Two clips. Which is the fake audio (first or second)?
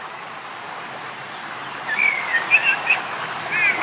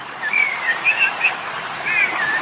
second